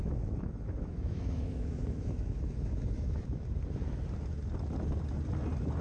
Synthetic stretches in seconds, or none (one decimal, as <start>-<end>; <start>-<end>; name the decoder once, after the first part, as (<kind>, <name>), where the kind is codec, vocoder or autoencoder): 0.0-3.5 (autoencoder, DAC-VAE)